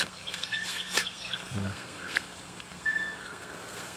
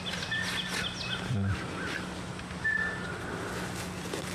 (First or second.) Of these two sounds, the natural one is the second